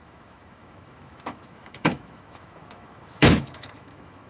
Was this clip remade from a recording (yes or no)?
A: yes